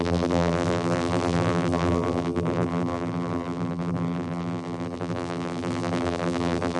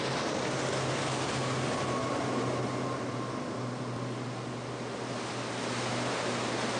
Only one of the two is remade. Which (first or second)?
first